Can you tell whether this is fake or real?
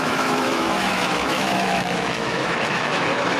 fake